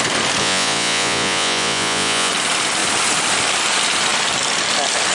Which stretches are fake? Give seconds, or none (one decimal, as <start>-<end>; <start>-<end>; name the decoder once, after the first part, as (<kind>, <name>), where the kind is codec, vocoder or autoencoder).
0.4-2.3 (vocoder, Vocos)